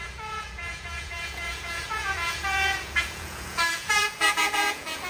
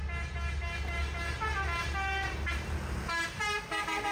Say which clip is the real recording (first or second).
second